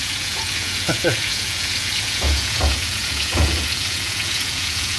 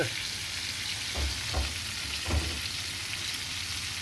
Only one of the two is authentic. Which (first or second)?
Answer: second